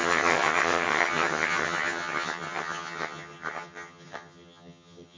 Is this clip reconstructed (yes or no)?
yes